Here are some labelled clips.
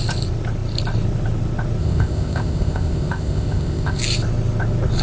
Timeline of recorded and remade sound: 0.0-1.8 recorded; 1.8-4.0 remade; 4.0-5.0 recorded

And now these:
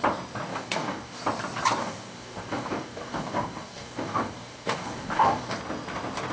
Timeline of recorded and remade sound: 0.0-0.5 recorded; 0.5-1.2 remade; 1.2-1.8 recorded; 1.8-5.6 remade; 5.6-6.3 recorded